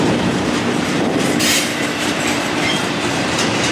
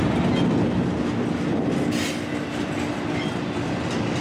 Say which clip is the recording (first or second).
second